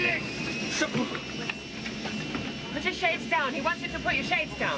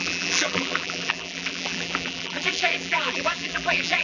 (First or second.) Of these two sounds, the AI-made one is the second